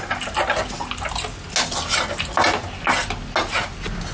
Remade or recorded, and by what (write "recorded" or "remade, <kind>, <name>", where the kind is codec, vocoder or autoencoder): recorded